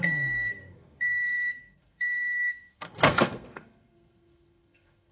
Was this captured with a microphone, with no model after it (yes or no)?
no